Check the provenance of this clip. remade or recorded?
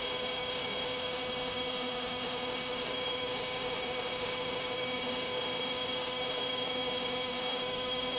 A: remade